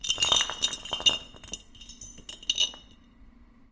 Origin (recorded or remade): recorded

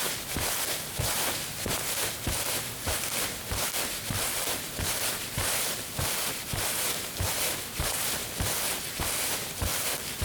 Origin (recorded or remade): remade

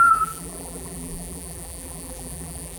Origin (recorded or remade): remade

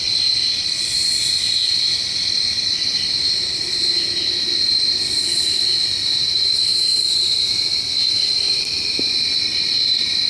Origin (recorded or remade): remade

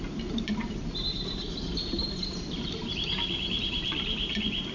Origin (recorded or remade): remade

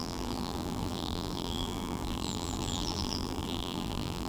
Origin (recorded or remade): remade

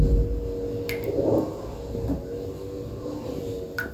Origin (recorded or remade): recorded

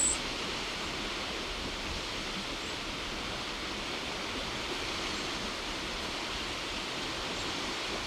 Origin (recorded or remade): recorded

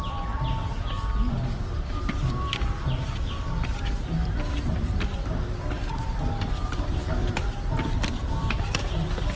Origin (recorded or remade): remade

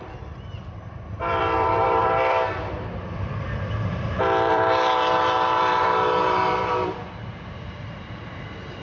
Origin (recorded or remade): remade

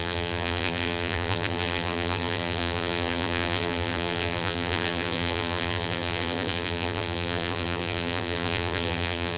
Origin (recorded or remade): remade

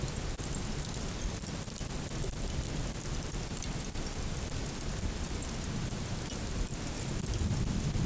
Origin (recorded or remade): recorded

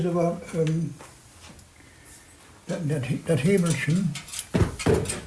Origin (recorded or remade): recorded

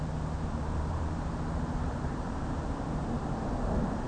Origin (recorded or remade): remade